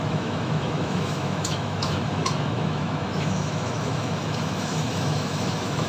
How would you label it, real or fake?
fake